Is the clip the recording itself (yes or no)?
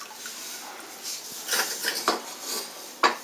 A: no